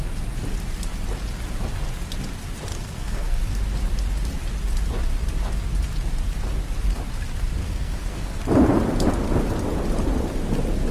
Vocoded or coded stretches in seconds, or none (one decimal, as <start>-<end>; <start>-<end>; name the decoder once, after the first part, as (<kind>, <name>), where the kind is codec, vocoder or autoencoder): 2.7-3.4 (codec, SNAC); 7.6-8.4